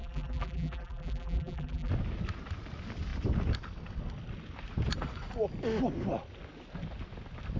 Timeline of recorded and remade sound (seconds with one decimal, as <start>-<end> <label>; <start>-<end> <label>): 0.0-1.9 remade; 1.9-7.6 recorded